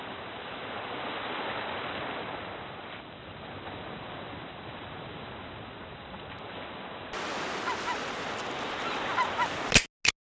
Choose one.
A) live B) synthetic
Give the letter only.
A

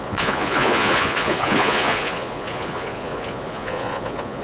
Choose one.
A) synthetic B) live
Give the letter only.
A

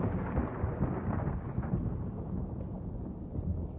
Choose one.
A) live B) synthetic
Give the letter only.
A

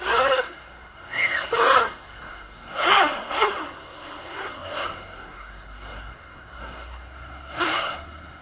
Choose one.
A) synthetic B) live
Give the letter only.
A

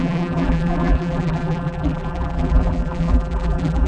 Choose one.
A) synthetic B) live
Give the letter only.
A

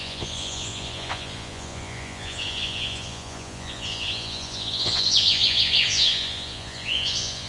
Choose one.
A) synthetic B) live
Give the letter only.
A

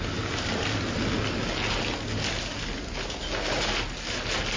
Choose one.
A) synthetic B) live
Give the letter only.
B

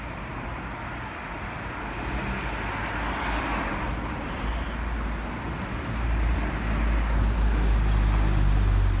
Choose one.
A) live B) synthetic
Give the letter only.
A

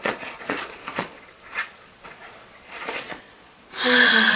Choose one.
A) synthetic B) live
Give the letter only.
A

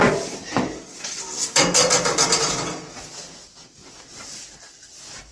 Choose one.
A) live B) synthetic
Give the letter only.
A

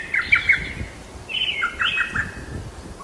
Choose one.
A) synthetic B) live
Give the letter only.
B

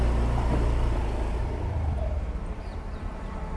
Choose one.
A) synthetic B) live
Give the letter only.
A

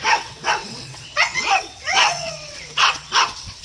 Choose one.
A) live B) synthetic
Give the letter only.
B